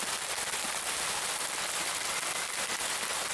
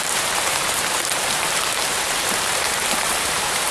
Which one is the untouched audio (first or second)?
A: first